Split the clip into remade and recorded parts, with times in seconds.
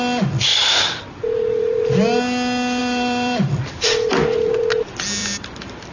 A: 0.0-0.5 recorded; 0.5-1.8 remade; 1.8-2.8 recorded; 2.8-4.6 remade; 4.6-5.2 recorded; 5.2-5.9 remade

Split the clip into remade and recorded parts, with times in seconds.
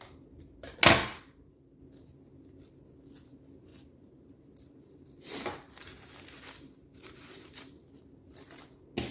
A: 0.0-1.0 recorded; 1.0-1.8 remade; 1.8-3.7 recorded; 3.7-7.9 remade; 7.9-9.1 recorded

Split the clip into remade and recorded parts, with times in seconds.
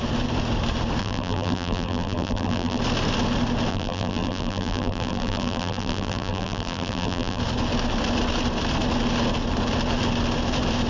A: 0.0-1.0 recorded; 1.0-2.8 remade; 2.8-3.7 recorded; 3.7-7.4 remade; 7.4-10.9 recorded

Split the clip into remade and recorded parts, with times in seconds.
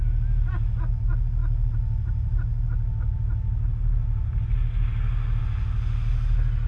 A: 0.0-6.7 recorded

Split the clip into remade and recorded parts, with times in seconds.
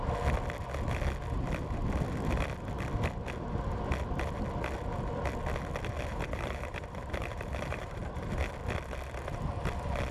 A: 0.0-6.1 recorded; 6.1-8.5 remade; 8.5-10.1 recorded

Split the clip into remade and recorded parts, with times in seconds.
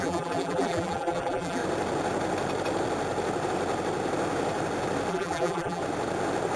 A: 0.0-1.6 remade; 1.6-5.1 recorded; 5.1-5.8 remade; 5.8-6.6 recorded